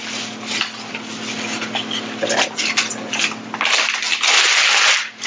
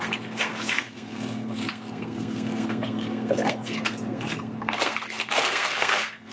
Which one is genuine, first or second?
first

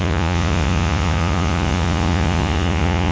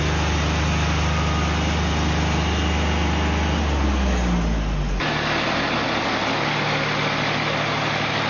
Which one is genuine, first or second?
second